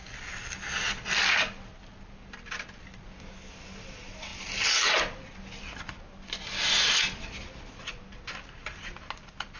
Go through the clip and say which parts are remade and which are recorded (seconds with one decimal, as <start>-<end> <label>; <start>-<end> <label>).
0.0-9.6 recorded